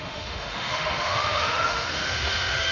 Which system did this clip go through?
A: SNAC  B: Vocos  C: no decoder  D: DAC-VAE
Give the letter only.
D